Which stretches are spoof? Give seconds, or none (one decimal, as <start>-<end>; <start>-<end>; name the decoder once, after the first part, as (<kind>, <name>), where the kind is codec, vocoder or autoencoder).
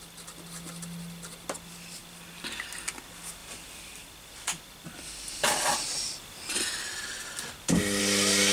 3.4-8.0 (vocoder, BigVGAN v2)